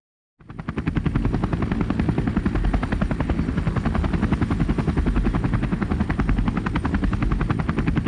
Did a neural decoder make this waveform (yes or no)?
no